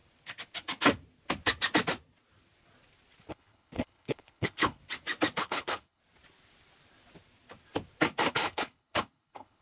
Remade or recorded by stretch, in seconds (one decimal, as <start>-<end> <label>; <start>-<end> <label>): 0.0-3.3 recorded; 3.3-4.8 remade; 4.8-5.4 recorded; 5.4-6.0 remade; 6.0-8.3 recorded; 8.3-9.6 remade